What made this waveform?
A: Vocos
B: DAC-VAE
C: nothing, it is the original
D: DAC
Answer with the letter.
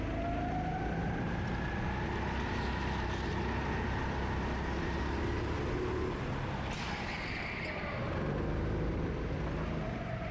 C